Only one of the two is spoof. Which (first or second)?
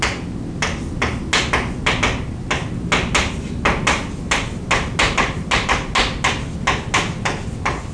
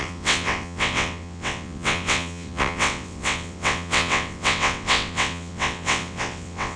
second